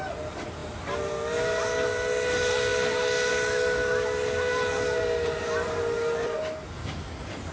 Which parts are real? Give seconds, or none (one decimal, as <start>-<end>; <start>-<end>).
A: 0.0-7.5

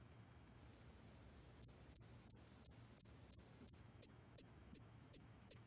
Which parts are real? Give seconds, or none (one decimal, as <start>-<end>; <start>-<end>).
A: 0.6-3.8